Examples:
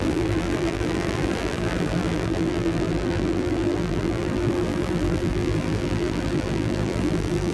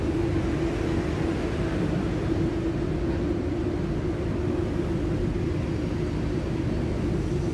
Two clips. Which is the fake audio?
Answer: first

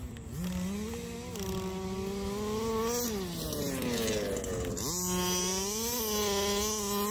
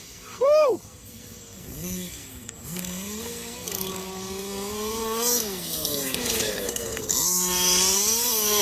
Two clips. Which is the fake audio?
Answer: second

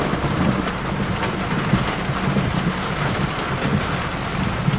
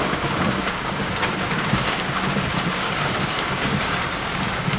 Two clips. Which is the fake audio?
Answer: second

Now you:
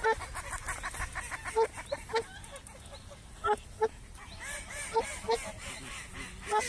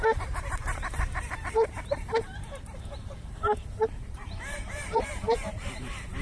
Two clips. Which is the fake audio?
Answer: second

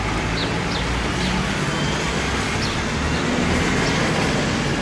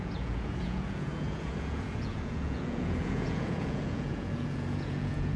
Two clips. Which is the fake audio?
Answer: second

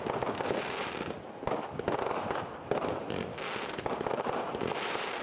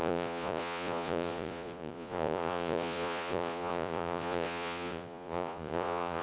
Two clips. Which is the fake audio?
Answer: second